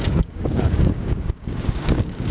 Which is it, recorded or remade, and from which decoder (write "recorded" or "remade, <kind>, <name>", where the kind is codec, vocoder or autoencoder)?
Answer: remade, codec, DAC